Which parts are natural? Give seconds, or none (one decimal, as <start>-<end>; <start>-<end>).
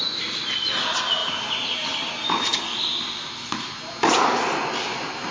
0.0-5.3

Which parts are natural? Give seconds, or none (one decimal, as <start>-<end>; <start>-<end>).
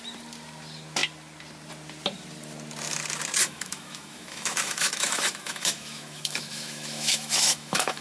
0.0-3.4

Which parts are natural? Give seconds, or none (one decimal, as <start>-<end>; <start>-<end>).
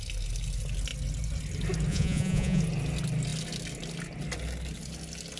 0.0-1.9; 2.6-5.4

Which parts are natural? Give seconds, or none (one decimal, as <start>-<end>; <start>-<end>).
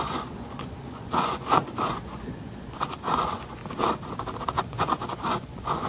3.6-4.6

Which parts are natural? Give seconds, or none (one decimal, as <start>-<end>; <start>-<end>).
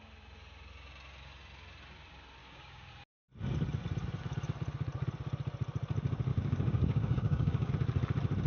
0.0-2.4; 2.9-6.3; 7.7-8.5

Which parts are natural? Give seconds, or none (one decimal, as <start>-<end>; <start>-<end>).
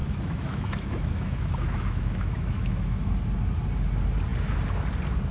3.1-5.3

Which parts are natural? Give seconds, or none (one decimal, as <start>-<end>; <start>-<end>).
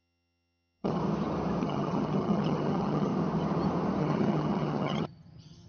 1.0-1.6; 3.1-4.0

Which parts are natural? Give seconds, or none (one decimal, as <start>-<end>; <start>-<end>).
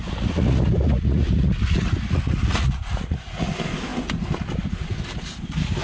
3.5-5.8